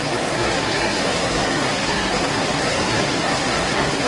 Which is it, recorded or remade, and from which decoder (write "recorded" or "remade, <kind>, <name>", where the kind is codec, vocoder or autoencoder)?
remade, codec, SNAC